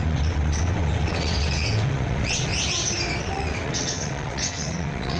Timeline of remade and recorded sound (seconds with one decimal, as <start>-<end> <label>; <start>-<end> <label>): 0.0-2.5 remade; 2.5-3.2 recorded; 3.2-5.2 remade